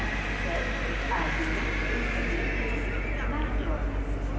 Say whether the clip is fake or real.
real